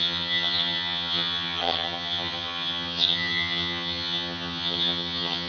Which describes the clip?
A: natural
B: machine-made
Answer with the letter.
B